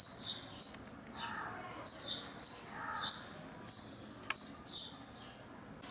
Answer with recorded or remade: recorded